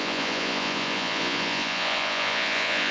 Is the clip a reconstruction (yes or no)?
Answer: yes